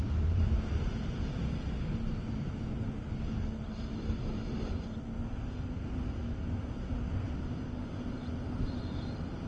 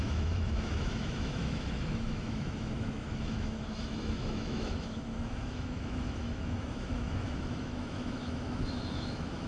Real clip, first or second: first